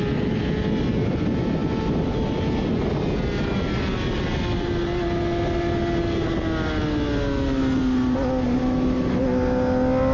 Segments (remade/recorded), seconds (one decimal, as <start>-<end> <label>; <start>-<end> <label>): 0.0-8.6 recorded; 8.6-9.2 remade; 9.2-10.1 recorded